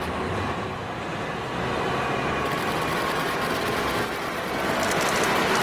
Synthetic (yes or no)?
no